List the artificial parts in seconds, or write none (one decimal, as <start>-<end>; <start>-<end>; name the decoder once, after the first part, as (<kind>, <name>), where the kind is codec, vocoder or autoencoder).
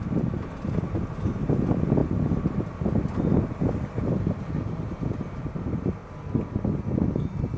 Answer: none